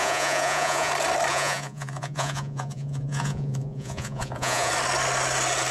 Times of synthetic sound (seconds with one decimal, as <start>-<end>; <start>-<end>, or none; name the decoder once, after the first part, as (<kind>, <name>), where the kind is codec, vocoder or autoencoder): 0.0-0.9 (vocoder, Vocos); 1.3-4.7